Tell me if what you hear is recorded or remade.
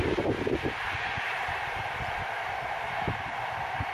recorded